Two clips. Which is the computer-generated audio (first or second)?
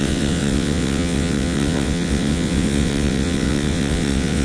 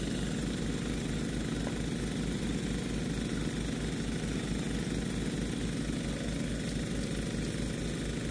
first